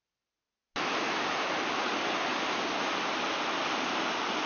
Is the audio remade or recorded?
recorded